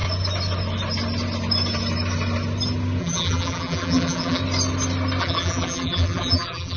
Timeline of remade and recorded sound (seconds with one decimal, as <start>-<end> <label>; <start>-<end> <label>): 0.0-3.0 recorded; 3.0-4.4 remade; 4.4-5.2 recorded; 5.2-6.8 remade